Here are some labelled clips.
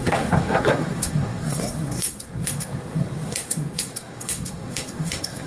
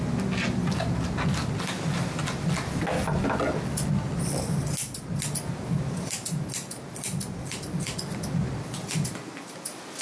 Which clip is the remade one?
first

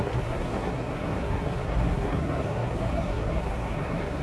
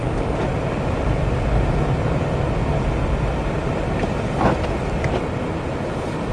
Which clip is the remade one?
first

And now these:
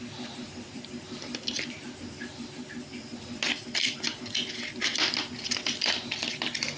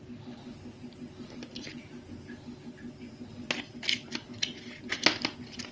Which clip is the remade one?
first